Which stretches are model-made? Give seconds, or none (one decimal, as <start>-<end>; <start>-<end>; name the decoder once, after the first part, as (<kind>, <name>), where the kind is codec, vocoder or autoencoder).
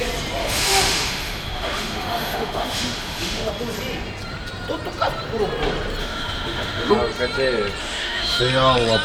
0.4-3.5 (autoencoder, DAC-VAE); 6.0-6.9; 7.8-8.4